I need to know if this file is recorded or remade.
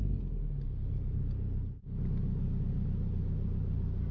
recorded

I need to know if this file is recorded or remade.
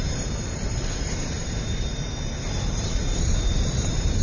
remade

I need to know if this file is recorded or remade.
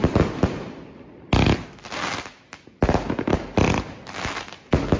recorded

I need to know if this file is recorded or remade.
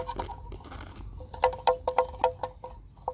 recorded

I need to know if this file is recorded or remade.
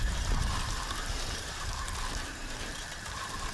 remade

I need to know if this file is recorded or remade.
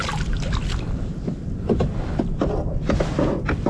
recorded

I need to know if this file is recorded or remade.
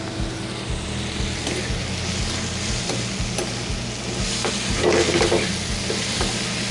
recorded